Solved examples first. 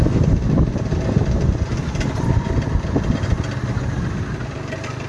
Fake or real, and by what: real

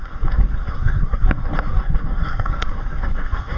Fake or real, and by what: fake, codec, SNAC